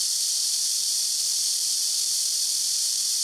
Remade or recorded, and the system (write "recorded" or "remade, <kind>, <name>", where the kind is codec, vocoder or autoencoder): remade, vocoder, BigVGAN v2